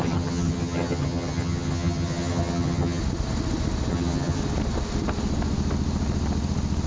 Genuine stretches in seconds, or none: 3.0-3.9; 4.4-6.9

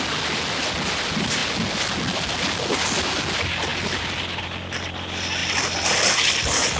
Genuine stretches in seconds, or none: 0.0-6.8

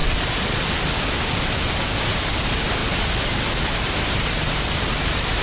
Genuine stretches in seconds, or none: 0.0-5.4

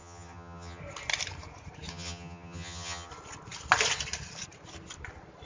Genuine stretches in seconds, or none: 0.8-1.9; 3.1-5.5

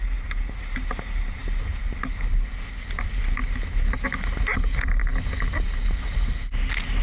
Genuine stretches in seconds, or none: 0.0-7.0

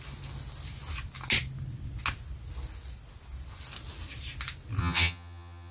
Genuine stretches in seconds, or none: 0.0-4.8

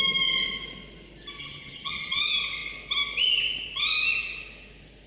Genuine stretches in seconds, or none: 0.0-1.4; 2.2-5.1